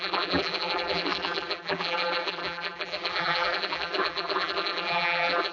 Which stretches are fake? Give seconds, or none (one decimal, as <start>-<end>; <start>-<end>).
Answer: 0.0-5.5